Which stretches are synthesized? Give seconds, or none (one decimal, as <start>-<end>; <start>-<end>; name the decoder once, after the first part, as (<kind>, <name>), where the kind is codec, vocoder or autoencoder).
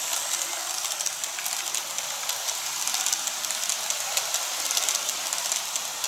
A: none